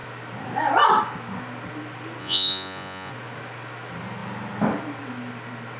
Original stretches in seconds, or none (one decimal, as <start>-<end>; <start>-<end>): 0.0-2.2; 3.1-5.8